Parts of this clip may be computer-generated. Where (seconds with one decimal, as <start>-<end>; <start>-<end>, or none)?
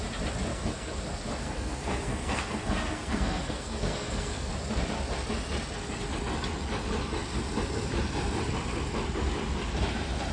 0.5-1.0; 1.4-4.5